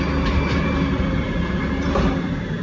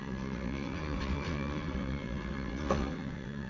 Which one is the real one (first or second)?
first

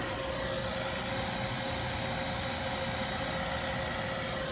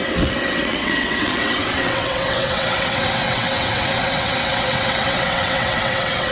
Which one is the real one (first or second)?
first